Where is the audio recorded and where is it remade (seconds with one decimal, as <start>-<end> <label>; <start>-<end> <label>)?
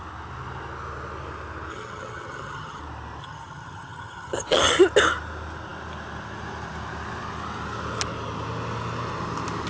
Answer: 0.0-1.7 recorded; 1.7-2.8 remade; 2.8-3.2 recorded; 3.2-4.7 remade; 4.7-9.7 recorded